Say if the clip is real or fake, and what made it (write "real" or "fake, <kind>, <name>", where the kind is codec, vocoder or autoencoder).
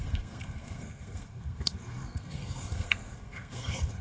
fake, codec, SNAC